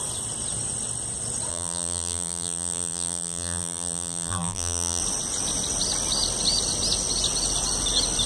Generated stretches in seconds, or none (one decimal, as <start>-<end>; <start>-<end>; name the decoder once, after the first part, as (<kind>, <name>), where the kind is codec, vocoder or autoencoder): 1.5-5.0 (vocoder, BigVGAN v2)